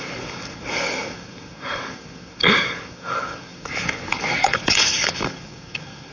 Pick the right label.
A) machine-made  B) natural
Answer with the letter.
A